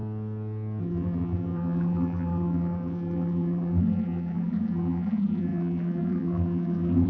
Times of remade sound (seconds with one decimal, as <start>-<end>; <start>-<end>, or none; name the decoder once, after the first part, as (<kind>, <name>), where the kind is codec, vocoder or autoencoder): 0.8-7.1 (vocoder, BigVGAN v2)